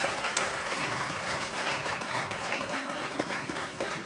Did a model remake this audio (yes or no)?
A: yes